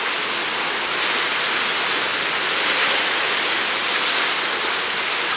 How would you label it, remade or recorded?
recorded